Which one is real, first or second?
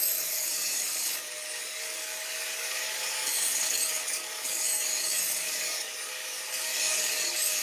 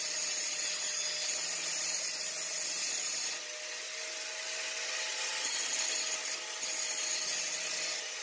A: second